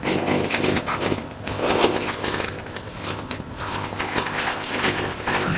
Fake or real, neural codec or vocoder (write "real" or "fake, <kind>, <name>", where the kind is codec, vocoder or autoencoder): fake, codec, ZipCodec